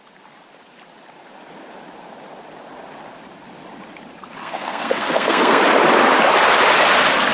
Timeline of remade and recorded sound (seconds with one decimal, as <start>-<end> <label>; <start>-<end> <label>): 0.0-4.4 recorded; 4.4-5.6 remade; 5.6-7.3 recorded